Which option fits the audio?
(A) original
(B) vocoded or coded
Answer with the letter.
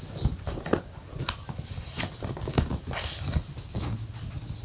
A